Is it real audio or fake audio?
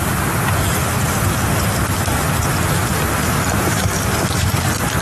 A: fake